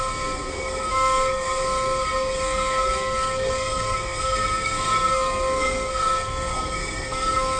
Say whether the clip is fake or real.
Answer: fake